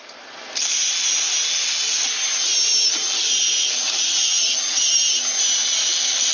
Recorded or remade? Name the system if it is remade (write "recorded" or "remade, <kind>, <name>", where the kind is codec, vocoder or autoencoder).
recorded